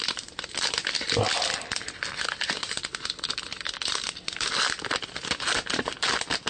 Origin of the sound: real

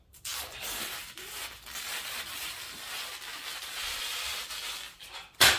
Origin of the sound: fake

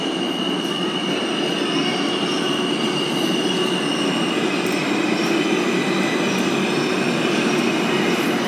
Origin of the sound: real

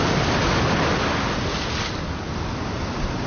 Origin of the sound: real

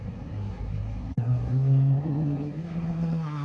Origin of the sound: fake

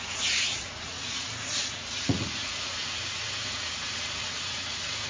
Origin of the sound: fake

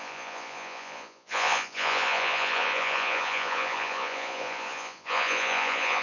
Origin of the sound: fake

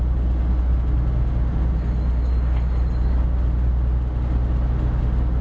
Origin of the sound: real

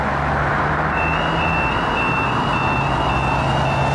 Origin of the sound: real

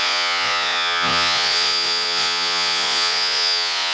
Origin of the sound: fake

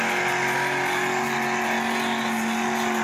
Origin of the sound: real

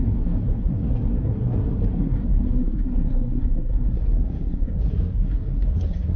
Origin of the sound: fake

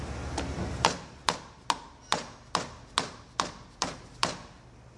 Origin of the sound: real